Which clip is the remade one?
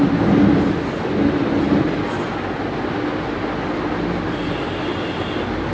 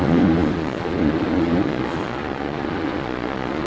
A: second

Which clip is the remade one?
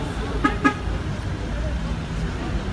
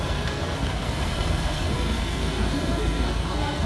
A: second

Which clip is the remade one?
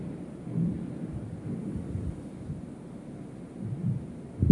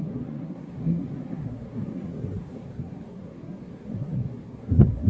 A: second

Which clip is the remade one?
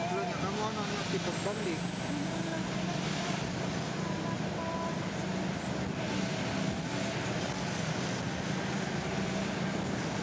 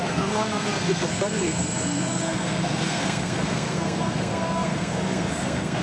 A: second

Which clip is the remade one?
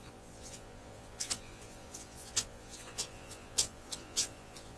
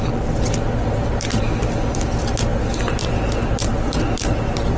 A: first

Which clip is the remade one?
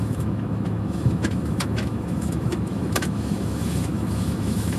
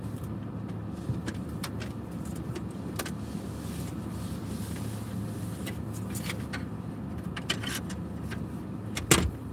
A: first